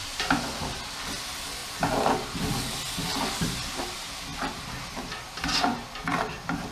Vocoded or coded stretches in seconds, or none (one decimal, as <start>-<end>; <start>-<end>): none